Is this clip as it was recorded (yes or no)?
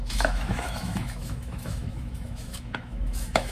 no